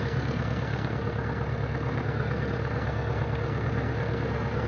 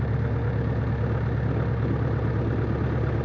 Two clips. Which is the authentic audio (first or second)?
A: second